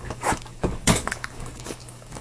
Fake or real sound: fake